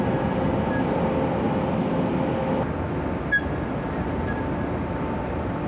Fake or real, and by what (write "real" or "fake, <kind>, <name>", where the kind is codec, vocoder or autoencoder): real